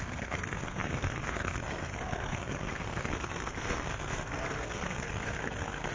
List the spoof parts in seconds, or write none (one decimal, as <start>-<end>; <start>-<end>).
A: 0.0-5.9